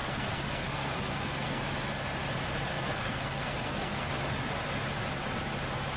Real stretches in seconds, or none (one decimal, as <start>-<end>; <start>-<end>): 1.6-2.7; 4.1-6.0